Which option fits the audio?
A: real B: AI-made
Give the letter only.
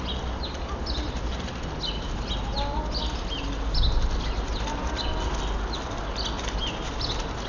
A